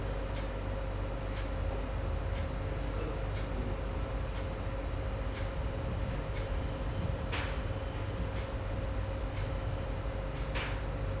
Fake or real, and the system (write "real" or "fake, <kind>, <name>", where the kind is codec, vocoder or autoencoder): real